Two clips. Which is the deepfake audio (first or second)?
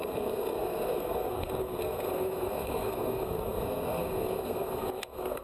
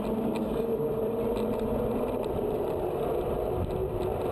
first